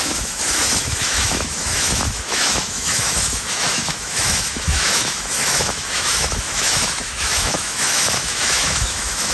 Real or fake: fake